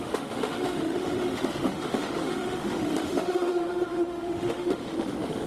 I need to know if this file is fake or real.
fake